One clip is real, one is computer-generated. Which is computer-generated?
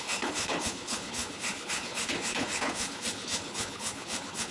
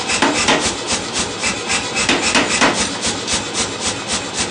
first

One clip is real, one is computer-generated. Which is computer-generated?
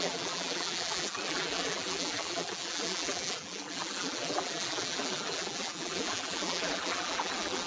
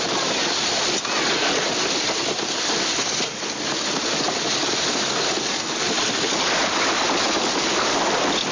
first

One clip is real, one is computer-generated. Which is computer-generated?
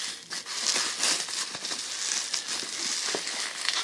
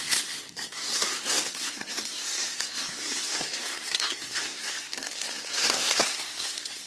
second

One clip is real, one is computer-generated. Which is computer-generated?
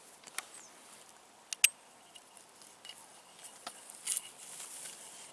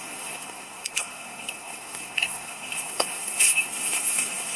second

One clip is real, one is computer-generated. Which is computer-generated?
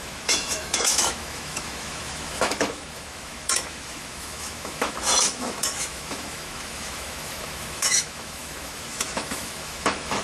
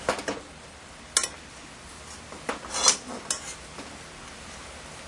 first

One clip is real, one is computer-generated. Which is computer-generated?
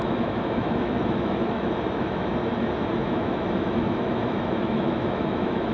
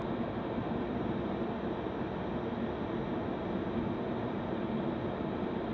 first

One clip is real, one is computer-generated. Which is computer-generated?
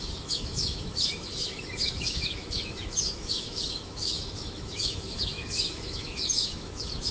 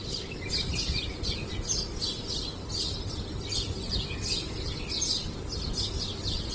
first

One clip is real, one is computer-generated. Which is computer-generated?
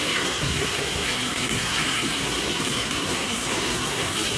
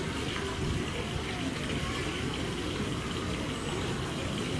first